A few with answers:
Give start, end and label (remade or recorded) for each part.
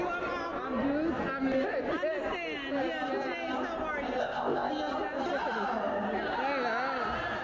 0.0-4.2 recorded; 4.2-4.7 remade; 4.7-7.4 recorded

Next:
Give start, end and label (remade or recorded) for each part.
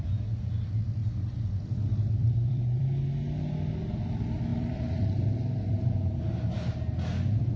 0.0-1.0 recorded; 1.0-2.8 remade; 2.8-4.5 recorded; 4.5-6.2 remade; 6.2-7.6 recorded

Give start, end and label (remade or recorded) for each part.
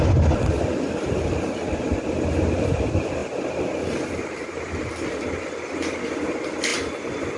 0.0-7.4 recorded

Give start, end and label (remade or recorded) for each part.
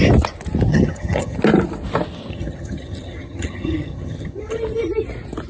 0.0-0.7 recorded; 0.7-1.4 remade; 1.4-2.3 recorded; 2.3-4.6 remade; 4.6-5.5 recorded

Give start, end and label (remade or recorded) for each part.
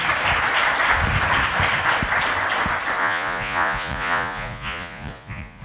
0.0-3.0 recorded; 3.0-5.6 remade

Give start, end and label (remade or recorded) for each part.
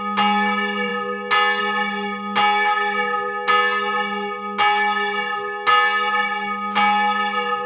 0.0-7.7 recorded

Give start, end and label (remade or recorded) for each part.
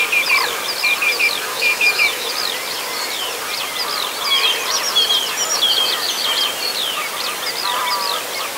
0.0-1.5 recorded; 1.5-2.3 remade; 2.3-8.6 recorded